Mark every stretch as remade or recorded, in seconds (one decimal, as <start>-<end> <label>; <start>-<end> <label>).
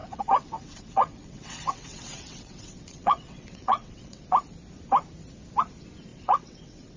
0.0-4.2 remade; 4.2-6.1 recorded; 6.1-7.0 remade